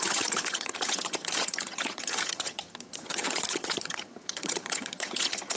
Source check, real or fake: fake